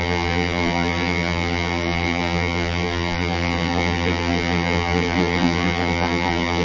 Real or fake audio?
fake